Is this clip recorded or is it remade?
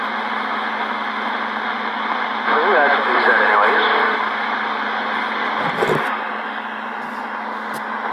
recorded